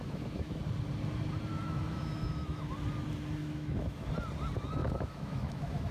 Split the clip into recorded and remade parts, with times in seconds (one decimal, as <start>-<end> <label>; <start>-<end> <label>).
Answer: 0.0-0.6 remade; 0.6-1.5 recorded; 1.5-2.6 remade; 2.6-3.4 recorded; 3.4-4.1 remade; 4.1-4.8 recorded; 4.8-5.9 remade